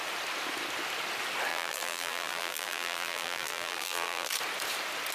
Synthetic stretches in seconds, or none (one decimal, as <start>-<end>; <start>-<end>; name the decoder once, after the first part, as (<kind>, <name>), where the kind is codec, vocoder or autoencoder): 1.5-4.3 (vocoder, BigVGAN v2)